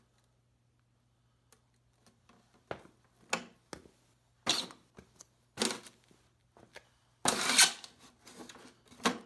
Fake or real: real